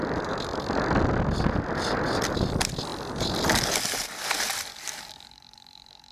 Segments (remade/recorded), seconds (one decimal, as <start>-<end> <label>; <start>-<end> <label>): 0.0-4.7 recorded; 4.7-6.1 remade